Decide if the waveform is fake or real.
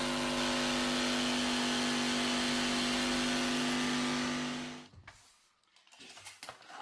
real